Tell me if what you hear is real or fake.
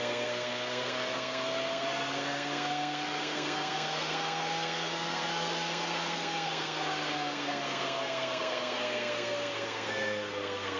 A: fake